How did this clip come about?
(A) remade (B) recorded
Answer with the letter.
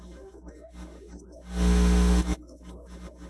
A